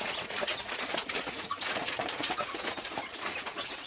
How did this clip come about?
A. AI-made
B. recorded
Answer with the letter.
A